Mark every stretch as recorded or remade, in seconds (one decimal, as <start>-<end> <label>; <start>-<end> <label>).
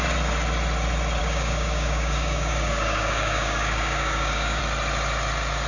0.0-1.2 recorded; 1.2-4.6 remade; 4.6-5.7 recorded